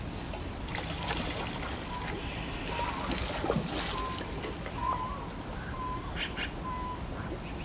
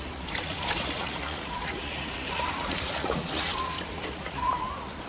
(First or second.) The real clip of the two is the first